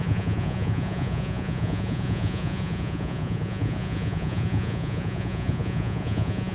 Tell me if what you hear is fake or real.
fake